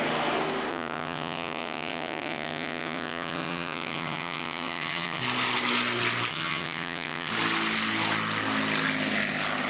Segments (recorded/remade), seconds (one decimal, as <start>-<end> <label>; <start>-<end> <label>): 0.0-0.7 recorded; 0.7-5.2 remade; 5.2-6.3 recorded; 6.3-7.3 remade; 7.3-9.7 recorded